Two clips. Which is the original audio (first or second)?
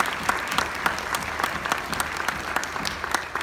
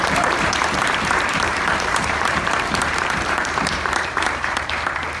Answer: first